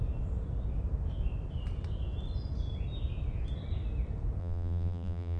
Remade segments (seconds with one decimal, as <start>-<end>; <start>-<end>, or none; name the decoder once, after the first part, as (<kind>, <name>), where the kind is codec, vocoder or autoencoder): 4.4-5.4 (vocoder, BigVGAN v2)